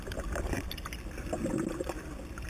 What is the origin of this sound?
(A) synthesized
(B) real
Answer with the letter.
B